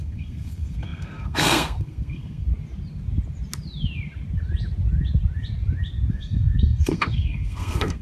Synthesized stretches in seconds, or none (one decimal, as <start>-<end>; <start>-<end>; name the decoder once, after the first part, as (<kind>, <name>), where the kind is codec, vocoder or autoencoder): 0.0-2.5 (codec, SNAC); 6.1-8.0